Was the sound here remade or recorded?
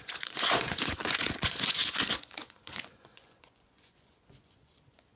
remade